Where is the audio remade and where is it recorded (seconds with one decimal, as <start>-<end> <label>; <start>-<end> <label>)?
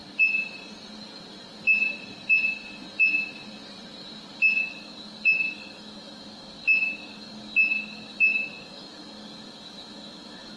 0.0-4.6 recorded; 4.6-10.6 remade